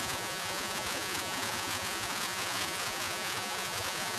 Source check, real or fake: fake